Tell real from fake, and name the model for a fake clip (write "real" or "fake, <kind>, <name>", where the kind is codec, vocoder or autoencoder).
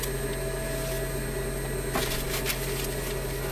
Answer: real